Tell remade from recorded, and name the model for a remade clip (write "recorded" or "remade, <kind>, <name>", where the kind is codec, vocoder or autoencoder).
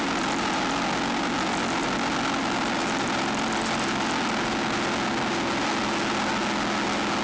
recorded